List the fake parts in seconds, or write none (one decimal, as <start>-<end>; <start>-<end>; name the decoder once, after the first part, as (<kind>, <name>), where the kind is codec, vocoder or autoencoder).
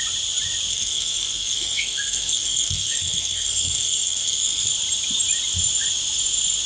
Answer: 0.7-4.7 (codec, SNAC)